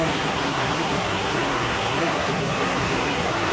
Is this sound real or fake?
fake